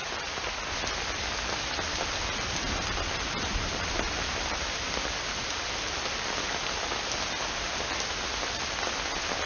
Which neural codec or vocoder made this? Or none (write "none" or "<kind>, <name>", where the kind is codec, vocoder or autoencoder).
vocoder, BigVGAN v2